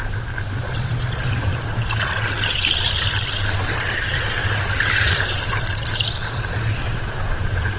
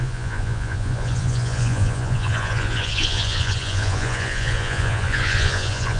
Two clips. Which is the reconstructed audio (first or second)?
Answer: second